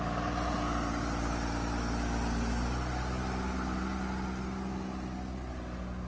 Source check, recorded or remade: recorded